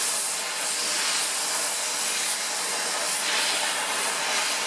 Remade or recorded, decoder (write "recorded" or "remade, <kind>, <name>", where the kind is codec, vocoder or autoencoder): recorded